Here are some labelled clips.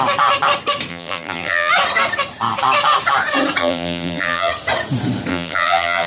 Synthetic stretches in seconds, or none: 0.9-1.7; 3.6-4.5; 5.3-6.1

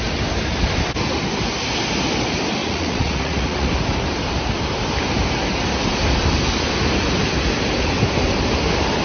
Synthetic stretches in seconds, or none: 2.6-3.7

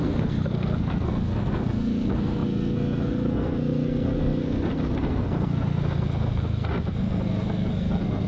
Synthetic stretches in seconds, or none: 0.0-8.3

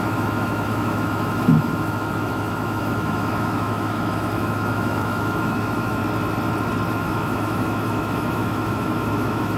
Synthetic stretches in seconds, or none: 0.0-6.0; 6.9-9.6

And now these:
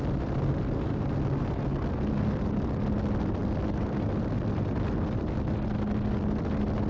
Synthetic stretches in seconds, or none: none